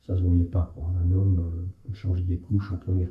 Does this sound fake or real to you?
fake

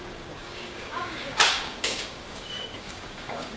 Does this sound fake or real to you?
fake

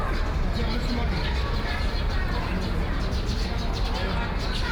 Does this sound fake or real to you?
real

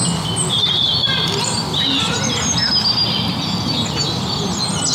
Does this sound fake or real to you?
real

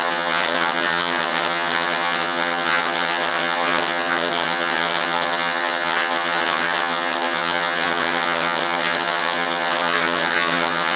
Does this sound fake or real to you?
fake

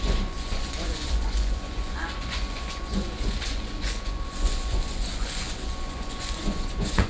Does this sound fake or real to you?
fake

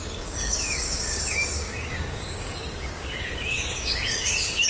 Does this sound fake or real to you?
fake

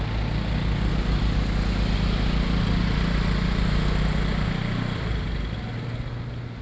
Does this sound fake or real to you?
real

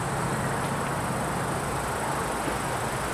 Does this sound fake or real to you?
real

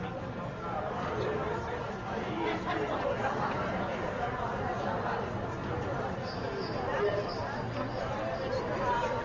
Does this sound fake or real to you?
real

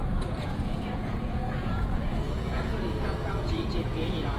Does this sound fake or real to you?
fake